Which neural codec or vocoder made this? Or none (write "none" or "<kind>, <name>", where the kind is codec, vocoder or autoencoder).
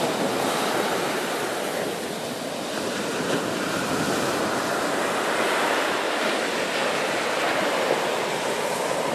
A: none